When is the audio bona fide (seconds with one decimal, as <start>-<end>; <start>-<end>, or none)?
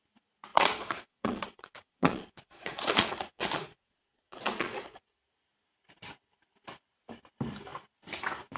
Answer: 0.0-0.5; 5.0-8.6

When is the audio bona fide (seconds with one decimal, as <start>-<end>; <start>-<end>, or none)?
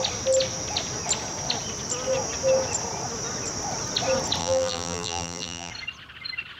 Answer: 0.0-4.4; 5.7-6.6